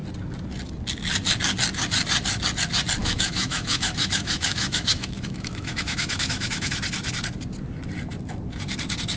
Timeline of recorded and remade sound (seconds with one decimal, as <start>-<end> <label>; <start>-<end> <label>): 0.0-3.0 recorded; 3.0-6.7 remade; 6.7-9.2 recorded